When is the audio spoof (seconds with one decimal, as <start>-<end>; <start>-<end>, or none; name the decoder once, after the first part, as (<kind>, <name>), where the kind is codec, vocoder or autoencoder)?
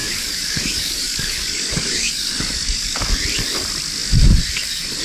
0.0-3.0 (codec, DAC)